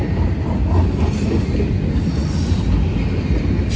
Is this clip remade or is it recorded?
recorded